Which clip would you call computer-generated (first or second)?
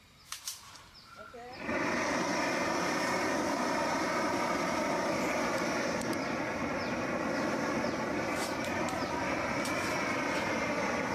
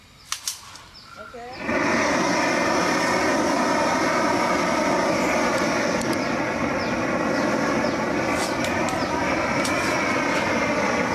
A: first